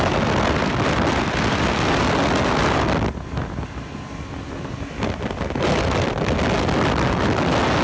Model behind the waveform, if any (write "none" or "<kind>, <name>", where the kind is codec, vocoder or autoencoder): none